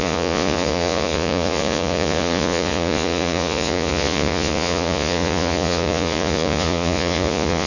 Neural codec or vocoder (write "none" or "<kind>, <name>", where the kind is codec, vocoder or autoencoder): vocoder, Vocos